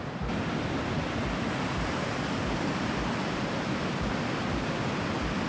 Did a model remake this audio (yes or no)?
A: no